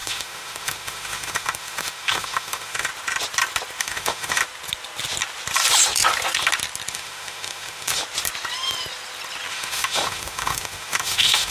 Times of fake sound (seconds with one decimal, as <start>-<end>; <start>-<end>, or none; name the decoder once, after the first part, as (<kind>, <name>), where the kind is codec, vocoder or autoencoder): 0.0-2.9 (autoencoder, DAC-VAE); 3.8-4.4; 6.9-8.0; 9.5-11.5